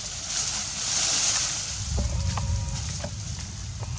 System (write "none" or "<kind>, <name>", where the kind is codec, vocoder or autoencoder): none